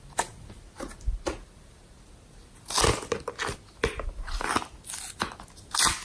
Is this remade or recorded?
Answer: recorded